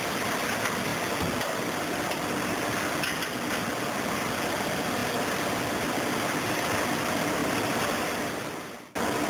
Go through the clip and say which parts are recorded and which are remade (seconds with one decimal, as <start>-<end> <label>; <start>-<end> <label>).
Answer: 0.0-7.4 recorded; 7.4-8.0 remade; 8.0-9.3 recorded